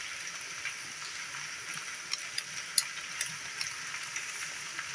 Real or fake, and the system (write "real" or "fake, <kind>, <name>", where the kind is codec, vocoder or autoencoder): real